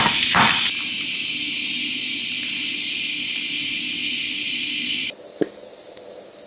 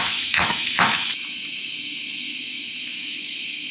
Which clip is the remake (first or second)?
second